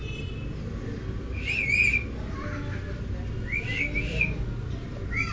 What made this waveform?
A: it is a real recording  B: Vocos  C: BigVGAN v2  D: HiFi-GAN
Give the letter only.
A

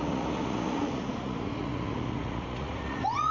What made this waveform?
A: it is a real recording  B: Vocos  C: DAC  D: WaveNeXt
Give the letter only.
B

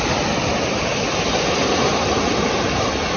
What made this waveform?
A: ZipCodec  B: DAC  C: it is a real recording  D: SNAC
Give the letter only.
C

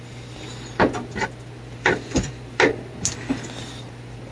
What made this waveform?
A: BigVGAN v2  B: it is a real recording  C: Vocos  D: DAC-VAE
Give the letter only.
B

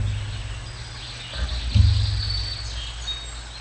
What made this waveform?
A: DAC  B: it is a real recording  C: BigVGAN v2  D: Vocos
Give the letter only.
B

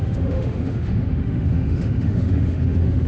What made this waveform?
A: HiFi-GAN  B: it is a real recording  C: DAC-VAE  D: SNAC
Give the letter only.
C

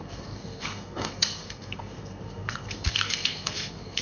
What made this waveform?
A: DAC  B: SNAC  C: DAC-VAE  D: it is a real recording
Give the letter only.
B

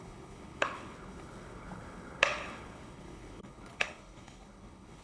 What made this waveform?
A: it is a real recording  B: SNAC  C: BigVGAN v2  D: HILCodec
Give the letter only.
D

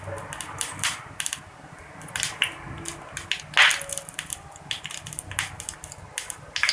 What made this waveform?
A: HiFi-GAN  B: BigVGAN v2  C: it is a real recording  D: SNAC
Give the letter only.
C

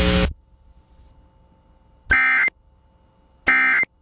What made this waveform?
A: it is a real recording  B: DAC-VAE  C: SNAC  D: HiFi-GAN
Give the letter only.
A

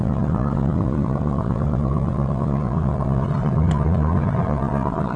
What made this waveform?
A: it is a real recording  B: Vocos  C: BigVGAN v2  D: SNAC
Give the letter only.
B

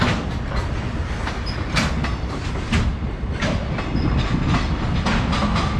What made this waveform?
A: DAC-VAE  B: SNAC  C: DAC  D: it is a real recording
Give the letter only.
D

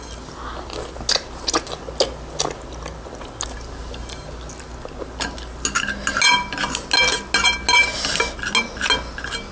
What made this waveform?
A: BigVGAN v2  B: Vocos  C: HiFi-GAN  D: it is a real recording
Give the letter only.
D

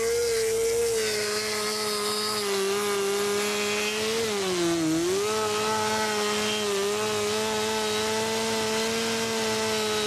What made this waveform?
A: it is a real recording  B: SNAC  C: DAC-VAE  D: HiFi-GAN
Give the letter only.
A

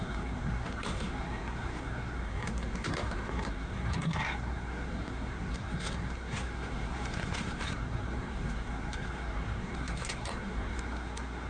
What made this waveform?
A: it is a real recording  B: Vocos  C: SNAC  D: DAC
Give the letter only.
C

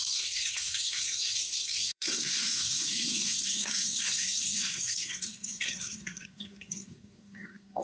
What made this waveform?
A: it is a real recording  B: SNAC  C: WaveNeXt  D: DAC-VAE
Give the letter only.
B